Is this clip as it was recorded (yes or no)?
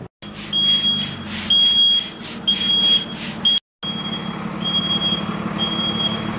yes